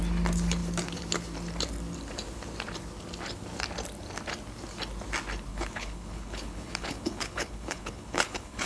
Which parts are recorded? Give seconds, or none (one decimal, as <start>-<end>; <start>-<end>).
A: 0.0-5.5